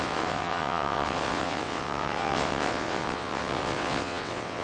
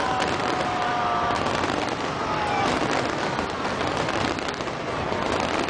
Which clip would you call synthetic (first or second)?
first